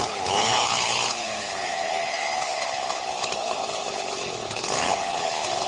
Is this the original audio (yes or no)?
no